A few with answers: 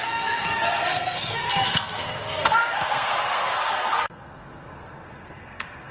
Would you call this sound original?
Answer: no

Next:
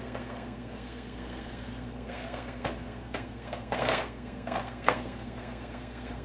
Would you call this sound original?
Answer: no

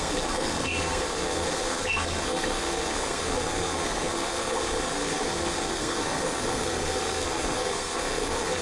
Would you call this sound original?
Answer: no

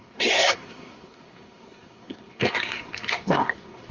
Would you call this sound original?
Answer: no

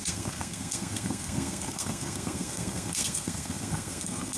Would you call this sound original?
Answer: no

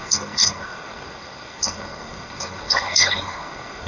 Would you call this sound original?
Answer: no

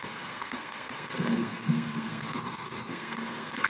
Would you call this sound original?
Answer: no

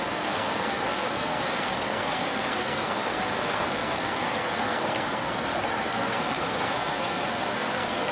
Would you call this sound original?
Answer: no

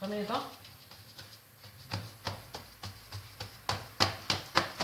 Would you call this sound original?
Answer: yes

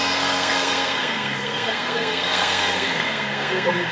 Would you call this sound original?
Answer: no